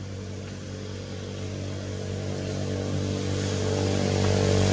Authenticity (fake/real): real